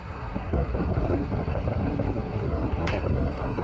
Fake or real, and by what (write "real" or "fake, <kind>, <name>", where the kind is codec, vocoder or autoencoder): fake, codec, SNAC